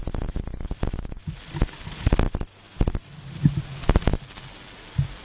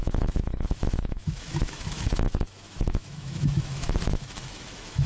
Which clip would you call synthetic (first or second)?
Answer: second